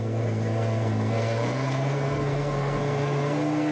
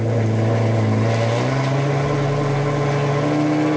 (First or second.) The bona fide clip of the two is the second